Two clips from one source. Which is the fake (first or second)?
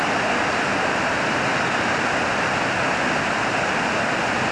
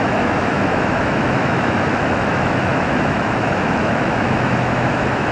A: second